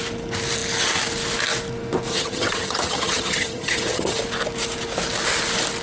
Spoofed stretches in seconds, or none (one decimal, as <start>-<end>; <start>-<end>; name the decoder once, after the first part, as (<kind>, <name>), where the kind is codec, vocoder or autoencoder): 2.1-4.2 (vocoder, HiFi-GAN)